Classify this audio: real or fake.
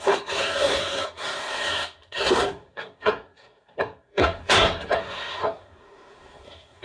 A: fake